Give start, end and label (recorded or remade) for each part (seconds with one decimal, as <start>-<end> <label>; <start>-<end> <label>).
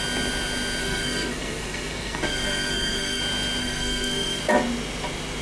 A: 0.0-0.8 recorded; 0.8-3.2 remade; 3.2-3.6 recorded; 3.6-4.4 remade; 4.4-5.4 recorded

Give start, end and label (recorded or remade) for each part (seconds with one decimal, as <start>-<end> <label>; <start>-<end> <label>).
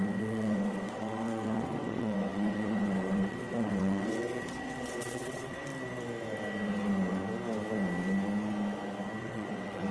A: 0.0-5.7 remade; 5.7-9.2 recorded; 9.2-9.9 remade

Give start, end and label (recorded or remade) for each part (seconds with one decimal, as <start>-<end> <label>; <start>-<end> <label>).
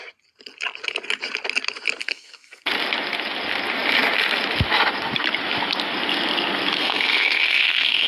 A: 0.0-2.0 recorded; 2.0-2.7 remade; 2.7-6.8 recorded; 6.8-8.1 remade